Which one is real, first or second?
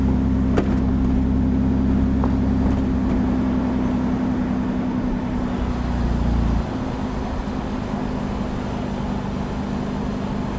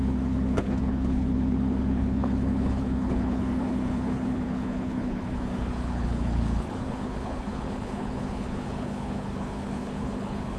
first